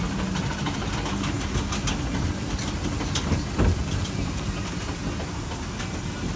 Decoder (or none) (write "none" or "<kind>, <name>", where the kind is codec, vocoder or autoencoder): none